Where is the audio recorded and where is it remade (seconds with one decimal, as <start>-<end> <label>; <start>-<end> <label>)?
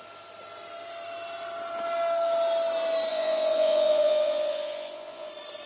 0.0-3.1 recorded; 3.1-5.3 remade; 5.3-5.7 recorded